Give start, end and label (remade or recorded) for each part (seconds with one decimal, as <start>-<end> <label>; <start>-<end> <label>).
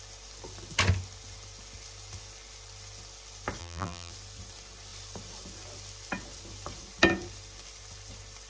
0.0-3.6 recorded; 3.6-4.1 remade; 4.1-8.5 recorded